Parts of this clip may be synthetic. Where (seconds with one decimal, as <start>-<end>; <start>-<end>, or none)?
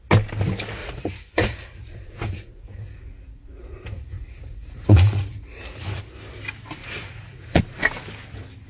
0.8-6.0; 6.8-7.6